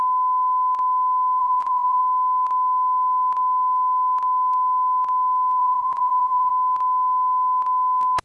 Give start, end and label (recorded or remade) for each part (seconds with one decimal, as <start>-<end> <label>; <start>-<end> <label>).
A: 0.0-1.4 recorded; 1.4-2.0 remade; 2.0-5.6 recorded; 5.6-6.5 remade; 6.5-8.2 recorded